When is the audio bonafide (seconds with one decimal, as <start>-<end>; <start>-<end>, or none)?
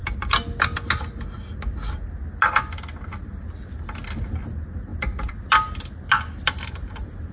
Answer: 0.0-7.3